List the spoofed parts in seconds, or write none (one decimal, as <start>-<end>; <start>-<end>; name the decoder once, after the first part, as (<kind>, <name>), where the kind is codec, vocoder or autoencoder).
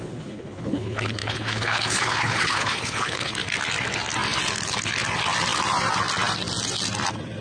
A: 0.0-3.3 (codec, HILCodec)